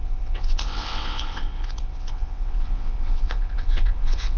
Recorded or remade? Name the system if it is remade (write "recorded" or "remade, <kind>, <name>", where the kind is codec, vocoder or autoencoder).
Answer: remade, vocoder, WaveNeXt